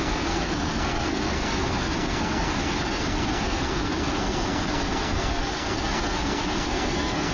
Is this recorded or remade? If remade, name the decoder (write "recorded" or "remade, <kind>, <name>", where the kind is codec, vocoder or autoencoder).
remade, codec, SNAC